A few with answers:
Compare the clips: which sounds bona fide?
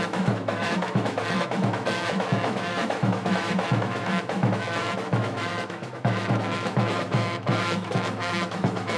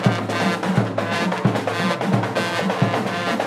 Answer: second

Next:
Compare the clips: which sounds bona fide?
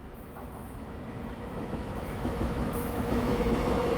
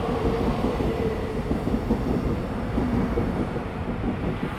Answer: second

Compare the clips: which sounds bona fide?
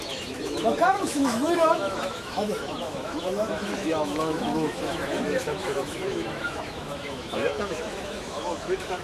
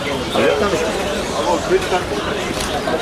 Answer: second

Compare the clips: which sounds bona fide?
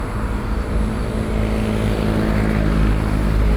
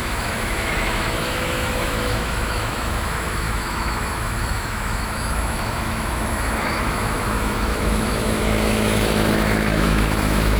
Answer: first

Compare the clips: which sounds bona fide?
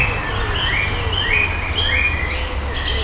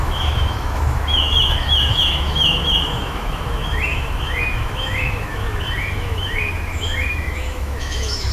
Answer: first